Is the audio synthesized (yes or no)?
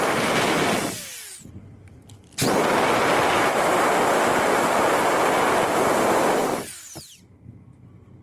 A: no